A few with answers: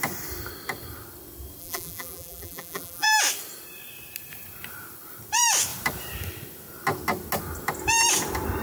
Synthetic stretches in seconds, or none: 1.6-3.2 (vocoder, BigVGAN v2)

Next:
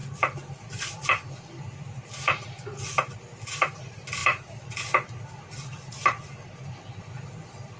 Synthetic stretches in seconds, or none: none